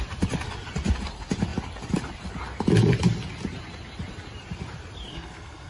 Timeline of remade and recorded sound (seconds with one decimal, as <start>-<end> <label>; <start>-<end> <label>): 0.0-5.1 recorded; 5.1-5.7 remade